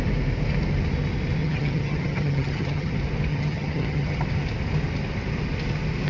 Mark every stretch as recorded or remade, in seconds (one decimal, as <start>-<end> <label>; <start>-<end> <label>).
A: 0.0-1.4 recorded; 1.4-2.9 remade; 2.9-3.3 recorded; 3.3-4.2 remade; 4.2-6.1 recorded